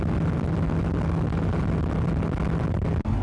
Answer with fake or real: real